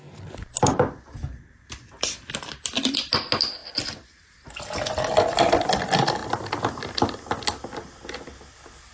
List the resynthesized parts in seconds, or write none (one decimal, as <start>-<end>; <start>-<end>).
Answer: 6.2-6.8